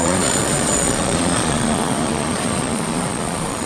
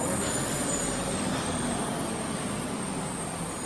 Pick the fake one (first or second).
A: first